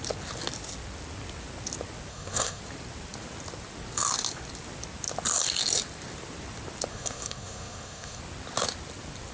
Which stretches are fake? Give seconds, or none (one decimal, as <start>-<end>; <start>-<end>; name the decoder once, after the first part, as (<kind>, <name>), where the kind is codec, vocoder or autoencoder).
2.1-2.6 (codec, SNAC); 6.9-8.2